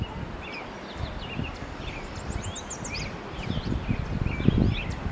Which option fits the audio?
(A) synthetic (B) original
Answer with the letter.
B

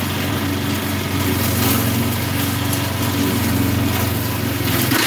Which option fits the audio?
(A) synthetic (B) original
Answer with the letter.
B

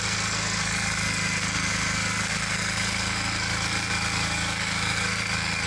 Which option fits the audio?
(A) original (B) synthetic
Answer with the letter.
B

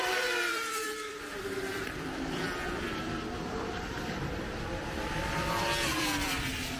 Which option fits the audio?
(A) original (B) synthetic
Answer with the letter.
B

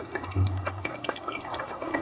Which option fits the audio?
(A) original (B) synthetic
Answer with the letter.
B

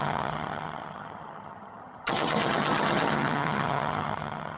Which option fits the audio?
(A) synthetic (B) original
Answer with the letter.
A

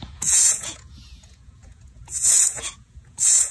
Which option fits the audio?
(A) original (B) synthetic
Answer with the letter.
B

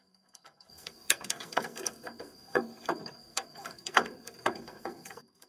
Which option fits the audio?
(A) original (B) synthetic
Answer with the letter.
B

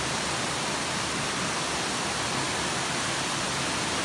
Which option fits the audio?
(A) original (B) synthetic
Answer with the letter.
A